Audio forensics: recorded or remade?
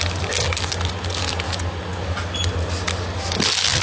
recorded